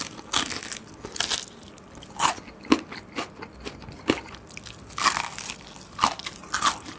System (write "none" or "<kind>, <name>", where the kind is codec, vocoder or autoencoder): none